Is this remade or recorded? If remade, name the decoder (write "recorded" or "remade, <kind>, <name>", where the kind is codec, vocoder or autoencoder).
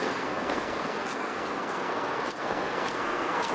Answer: remade, codec, SNAC